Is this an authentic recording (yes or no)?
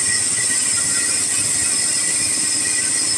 yes